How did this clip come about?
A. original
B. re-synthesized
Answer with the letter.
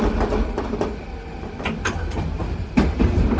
A